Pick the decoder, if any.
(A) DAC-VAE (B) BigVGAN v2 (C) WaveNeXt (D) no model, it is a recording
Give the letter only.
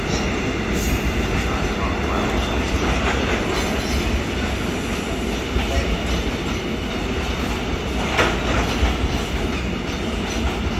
D